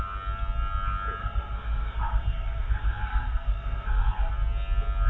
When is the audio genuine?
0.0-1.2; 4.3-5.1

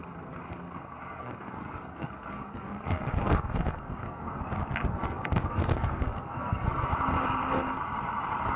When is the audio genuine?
4.4-4.9; 6.9-8.6

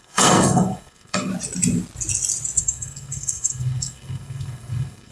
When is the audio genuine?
1.3-2.6

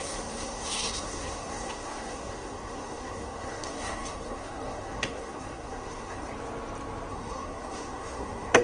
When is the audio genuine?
6.3-7.1

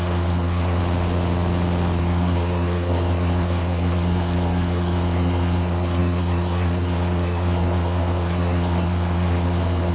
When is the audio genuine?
0.8-2.0

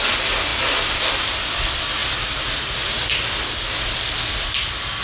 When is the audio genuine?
0.0-5.0

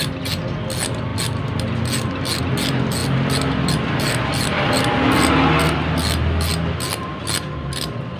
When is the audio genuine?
0.0-8.2